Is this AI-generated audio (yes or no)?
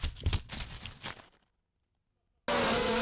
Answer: no